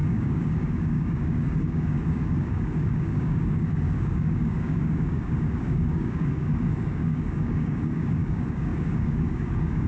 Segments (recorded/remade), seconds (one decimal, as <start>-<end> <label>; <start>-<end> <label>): 0.0-9.9 remade